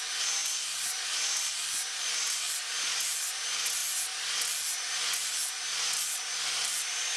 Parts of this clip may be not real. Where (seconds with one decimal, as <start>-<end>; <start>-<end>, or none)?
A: none